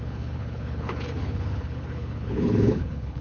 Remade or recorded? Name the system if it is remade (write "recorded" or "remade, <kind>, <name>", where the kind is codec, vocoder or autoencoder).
remade, codec, HILCodec